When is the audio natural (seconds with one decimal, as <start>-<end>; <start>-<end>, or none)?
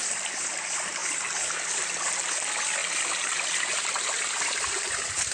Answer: 0.0-5.3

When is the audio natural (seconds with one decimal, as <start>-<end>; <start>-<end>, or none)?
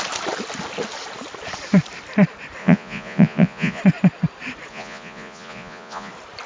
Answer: 0.0-2.6; 3.8-4.7; 6.1-6.5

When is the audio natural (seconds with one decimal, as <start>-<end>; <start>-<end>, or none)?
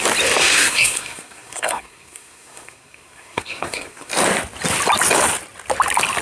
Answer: 0.0-0.4; 4.1-6.2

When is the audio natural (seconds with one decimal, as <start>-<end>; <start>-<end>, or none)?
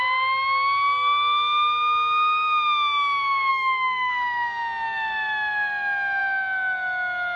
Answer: 0.0-3.5; 4.1-7.4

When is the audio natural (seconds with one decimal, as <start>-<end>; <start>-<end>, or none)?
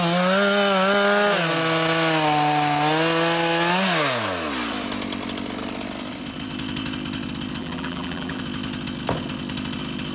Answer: 0.0-7.6; 8.4-10.1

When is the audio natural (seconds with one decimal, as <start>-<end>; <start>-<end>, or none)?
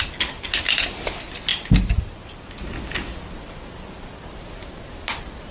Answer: 0.0-5.5